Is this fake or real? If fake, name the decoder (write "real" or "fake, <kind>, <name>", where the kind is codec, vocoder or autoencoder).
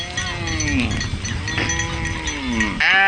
real